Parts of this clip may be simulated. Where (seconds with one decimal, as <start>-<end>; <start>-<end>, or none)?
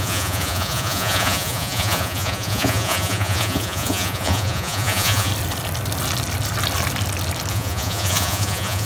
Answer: 0.0-5.3; 7.5-8.9